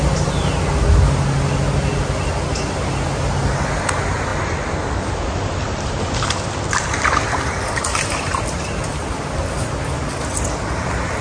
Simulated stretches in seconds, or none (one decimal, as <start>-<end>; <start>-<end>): none